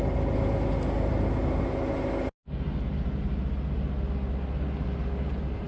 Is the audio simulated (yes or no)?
no